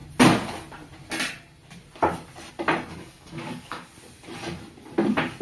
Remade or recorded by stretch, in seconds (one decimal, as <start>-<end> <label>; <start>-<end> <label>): 0.0-2.9 recorded; 2.9-3.9 remade; 3.9-5.4 recorded